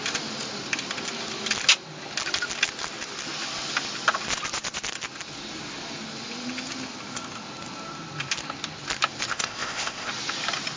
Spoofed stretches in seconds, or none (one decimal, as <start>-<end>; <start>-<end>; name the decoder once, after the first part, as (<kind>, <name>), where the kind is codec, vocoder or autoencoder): 9.3-10.1 (codec, ZipCodec)